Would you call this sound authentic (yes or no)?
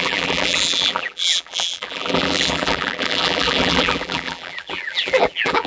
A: no